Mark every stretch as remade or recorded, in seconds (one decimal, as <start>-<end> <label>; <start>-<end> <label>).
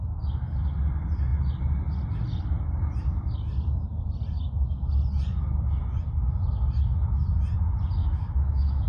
0.0-8.0 recorded; 8.0-8.9 remade